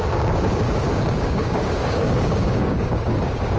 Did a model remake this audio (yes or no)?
yes